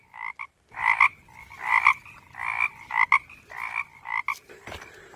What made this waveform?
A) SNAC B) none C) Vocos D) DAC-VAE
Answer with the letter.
B